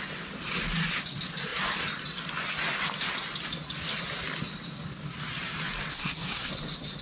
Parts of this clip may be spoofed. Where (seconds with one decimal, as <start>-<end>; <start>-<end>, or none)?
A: 5.9-6.5